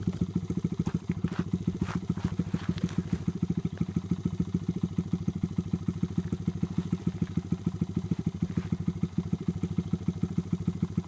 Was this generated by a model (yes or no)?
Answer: no